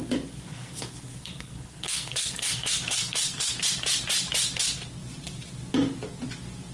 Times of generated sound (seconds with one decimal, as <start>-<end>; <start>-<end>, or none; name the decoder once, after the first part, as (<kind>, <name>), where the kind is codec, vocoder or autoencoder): 0.5-3.5 (codec, SNAC)